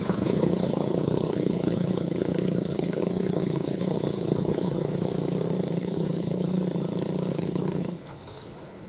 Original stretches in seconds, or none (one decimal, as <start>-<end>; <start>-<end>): 5.1-5.8; 6.6-7.3